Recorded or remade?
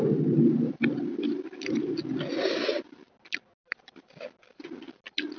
recorded